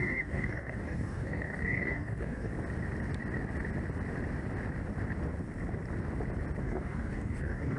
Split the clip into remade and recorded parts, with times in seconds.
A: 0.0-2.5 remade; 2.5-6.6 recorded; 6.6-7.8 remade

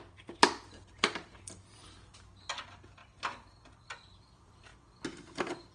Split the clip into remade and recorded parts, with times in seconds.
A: 0.0-1.8 remade; 1.8-2.5 recorded; 2.5-3.0 remade; 3.0-4.2 recorded; 4.2-4.7 remade; 4.7-5.2 recorded; 5.2-5.7 remade

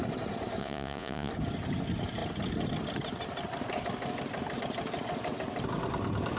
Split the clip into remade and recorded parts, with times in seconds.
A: 0.0-0.6 recorded; 0.6-1.3 remade; 1.3-6.4 recorded

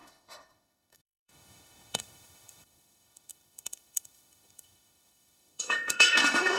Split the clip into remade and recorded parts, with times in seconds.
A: 0.0-6.6 remade

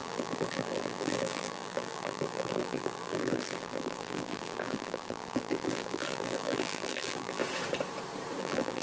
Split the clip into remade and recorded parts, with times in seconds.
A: 0.0-7.4 remade; 7.4-8.4 recorded; 8.4-8.8 remade

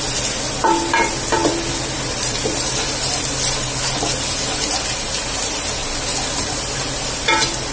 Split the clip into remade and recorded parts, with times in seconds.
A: 0.0-7.7 recorded

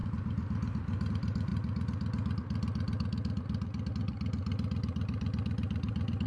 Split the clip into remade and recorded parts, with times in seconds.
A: 0.0-1.1 recorded; 1.1-1.5 remade; 1.5-3.9 recorded; 3.9-6.3 remade

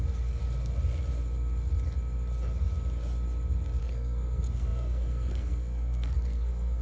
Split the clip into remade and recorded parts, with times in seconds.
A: 0.0-0.4 remade; 0.4-3.8 recorded; 3.8-6.8 remade